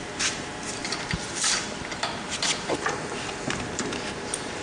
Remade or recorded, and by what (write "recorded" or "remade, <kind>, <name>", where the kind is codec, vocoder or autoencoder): remade, vocoder, BigVGAN v2